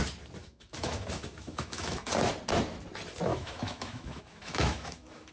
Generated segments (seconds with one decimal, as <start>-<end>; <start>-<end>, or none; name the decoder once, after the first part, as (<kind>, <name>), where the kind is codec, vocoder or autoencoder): 0.4-2.1 (autoencoder, DAC-VAE); 3.3-5.3